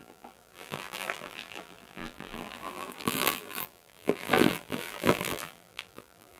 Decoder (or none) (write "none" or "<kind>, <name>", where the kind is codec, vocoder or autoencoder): vocoder, BigVGAN v2